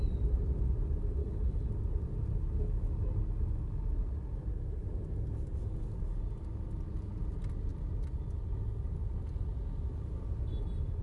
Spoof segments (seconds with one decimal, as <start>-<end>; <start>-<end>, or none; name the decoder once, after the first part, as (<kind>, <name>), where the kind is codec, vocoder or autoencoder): 1.2-1.7 (codec, HILCodec)